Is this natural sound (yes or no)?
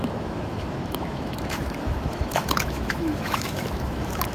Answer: no